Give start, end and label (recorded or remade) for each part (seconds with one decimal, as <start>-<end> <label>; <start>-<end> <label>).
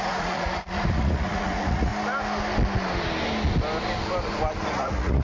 0.0-1.9 remade; 1.9-4.7 recorded; 4.7-5.2 remade